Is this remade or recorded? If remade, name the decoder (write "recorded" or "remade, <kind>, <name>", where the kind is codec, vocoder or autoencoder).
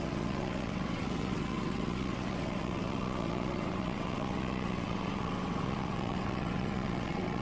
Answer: remade, vocoder, WaveNeXt